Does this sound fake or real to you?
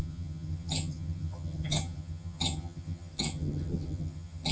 fake